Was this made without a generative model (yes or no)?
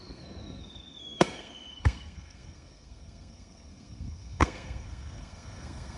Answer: no